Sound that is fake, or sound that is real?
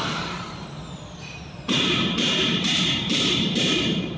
fake